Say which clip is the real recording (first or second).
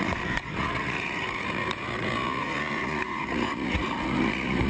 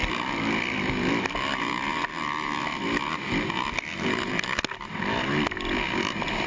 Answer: second